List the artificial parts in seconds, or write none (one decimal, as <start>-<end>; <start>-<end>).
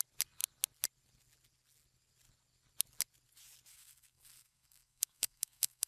3.7-5.9